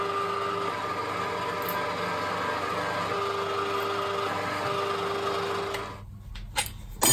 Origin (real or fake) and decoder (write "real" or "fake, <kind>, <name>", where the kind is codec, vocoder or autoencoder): real